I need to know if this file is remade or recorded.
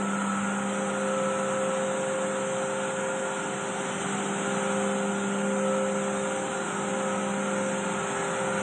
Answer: recorded